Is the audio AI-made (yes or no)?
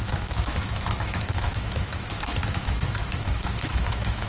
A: yes